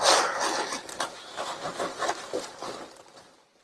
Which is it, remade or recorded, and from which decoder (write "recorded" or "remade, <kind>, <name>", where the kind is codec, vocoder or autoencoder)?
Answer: recorded